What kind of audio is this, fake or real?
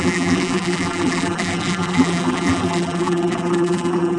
fake